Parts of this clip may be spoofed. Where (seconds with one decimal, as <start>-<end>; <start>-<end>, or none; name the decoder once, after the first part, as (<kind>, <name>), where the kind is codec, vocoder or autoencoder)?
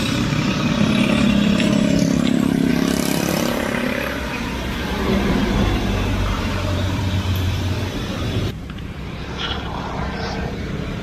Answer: 0.0-2.7 (vocoder, BigVGAN v2); 3.3-11.0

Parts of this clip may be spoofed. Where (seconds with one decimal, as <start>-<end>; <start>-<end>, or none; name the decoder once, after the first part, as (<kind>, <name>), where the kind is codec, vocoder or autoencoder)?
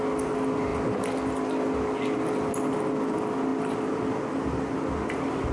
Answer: none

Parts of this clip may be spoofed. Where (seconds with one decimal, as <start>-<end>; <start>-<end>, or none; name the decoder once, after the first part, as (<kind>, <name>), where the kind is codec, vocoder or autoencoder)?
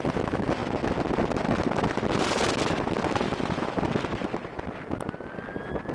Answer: none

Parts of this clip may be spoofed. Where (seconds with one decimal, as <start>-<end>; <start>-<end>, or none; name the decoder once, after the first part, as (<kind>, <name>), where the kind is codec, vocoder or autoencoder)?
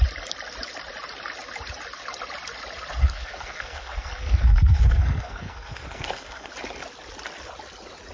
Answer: 3.0-6.5 (codec, SNAC)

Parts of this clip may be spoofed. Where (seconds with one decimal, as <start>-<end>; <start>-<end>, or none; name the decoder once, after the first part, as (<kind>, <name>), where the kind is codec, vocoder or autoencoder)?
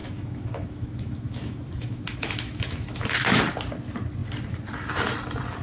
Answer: 0.0-3.4 (autoencoder, DAC-VAE)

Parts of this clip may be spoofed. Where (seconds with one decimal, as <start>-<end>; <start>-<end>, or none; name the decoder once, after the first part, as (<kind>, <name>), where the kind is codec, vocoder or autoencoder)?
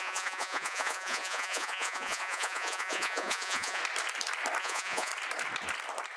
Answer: 0.0-3.8 (vocoder, Vocos); 4.6-5.1